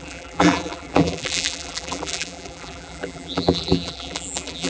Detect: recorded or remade remade